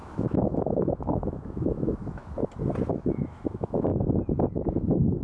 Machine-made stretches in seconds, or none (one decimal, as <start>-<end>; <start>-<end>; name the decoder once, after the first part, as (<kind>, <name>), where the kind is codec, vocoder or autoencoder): 0.0-2.2 (autoencoder, DAC-VAE); 2.9-3.9; 4.5-5.2